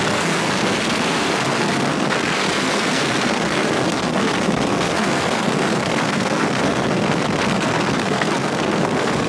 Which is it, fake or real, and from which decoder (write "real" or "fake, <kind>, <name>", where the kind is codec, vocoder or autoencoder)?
fake, codec, SNAC